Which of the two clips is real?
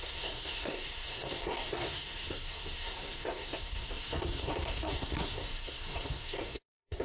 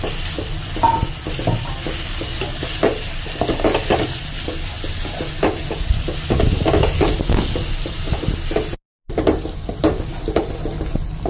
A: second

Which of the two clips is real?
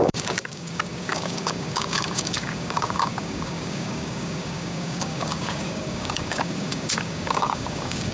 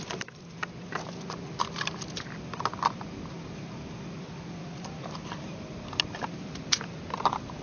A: second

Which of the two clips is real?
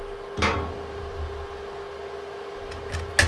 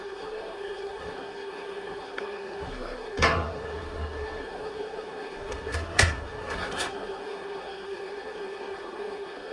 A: first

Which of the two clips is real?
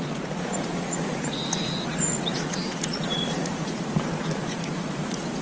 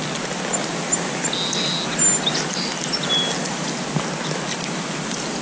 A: second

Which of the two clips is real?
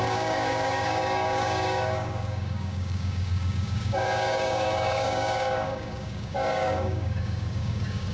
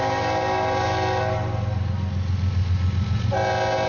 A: second